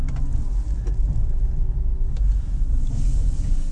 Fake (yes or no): no